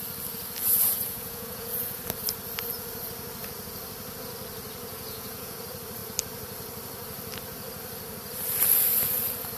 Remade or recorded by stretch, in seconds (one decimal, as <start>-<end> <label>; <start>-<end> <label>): 0.0-0.6 recorded; 0.6-2.0 remade; 2.0-4.9 recorded; 4.9-5.6 remade; 5.6-9.6 recorded